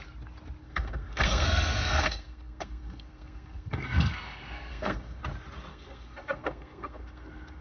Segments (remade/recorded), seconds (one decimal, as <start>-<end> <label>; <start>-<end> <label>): 0.0-0.6 recorded; 0.6-5.2 remade; 5.2-5.7 recorded; 5.7-7.6 remade